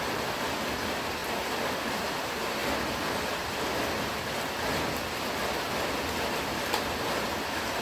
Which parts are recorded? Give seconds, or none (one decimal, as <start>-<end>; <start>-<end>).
0.0-7.8